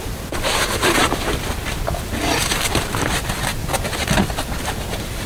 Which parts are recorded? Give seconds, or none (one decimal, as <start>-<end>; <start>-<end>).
0.0-5.3